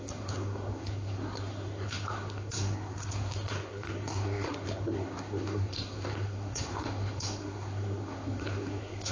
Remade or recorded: remade